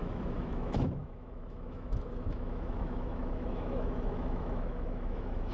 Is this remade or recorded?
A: remade